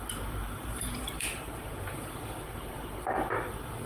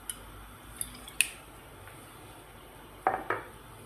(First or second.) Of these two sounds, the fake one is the first